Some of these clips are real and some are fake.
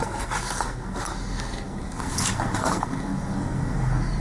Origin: fake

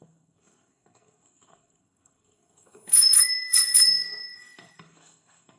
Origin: fake